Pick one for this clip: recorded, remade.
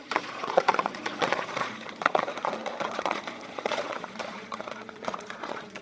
remade